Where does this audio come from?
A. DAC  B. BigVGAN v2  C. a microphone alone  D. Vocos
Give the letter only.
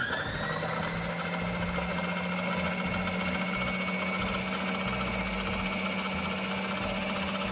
C